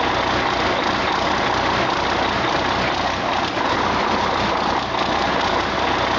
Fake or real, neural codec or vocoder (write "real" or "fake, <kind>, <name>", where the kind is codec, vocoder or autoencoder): real